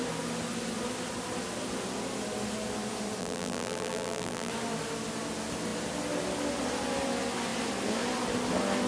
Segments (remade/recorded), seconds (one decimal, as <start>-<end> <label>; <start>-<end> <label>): 0.0-3.2 recorded; 3.2-4.5 remade; 4.5-8.9 recorded